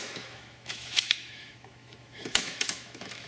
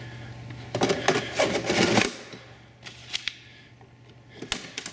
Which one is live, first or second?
second